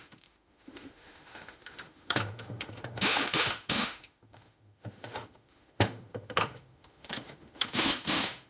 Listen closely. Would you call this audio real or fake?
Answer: fake